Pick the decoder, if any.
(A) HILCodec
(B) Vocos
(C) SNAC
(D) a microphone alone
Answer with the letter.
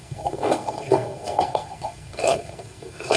C